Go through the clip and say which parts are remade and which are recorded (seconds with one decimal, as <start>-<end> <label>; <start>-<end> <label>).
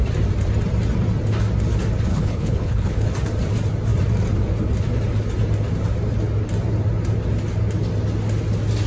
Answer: 0.0-2.1 recorded; 2.1-3.1 remade; 3.1-8.9 recorded